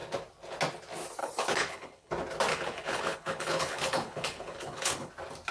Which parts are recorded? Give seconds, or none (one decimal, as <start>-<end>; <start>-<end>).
0.0-1.2; 2.1-2.5; 5.1-5.5